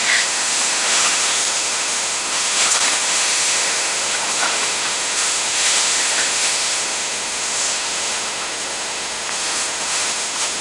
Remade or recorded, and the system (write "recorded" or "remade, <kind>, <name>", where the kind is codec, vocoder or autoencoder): remade, autoencoder, DAC-VAE